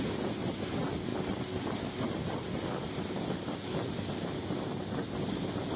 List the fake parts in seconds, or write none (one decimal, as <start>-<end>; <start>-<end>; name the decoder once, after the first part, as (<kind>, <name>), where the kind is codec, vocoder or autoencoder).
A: none